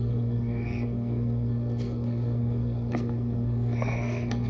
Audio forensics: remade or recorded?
remade